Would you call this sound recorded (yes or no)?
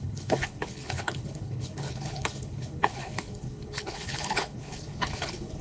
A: no